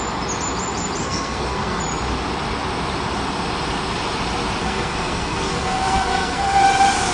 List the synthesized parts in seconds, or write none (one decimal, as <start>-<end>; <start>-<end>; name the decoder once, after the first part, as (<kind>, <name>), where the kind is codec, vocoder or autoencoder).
1.0-1.8 (codec, SNAC); 4.6-6.6